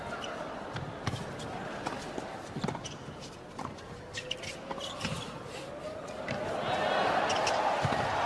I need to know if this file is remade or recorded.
recorded